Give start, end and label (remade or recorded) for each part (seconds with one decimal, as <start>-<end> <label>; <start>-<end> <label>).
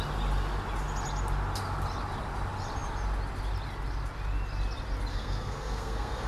0.0-5.1 recorded; 5.1-6.3 remade